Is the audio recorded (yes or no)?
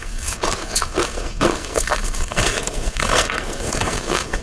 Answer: no